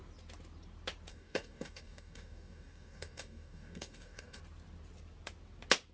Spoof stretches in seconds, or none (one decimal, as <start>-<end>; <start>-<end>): 1.1-4.4

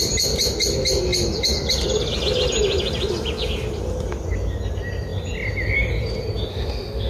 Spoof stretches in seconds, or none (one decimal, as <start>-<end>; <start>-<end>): 6.5-7.1

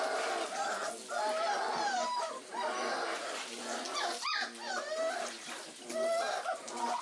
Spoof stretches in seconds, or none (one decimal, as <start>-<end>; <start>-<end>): none

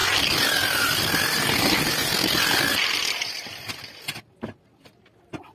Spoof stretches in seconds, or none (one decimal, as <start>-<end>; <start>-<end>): none